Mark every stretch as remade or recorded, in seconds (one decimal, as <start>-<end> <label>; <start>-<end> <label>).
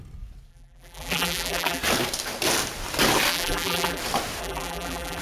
0.0-0.5 recorded; 0.5-1.8 remade; 1.8-3.3 recorded; 3.3-4.0 remade; 4.0-4.4 recorded; 4.4-5.2 remade